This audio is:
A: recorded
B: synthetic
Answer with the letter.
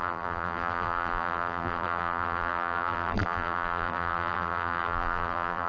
B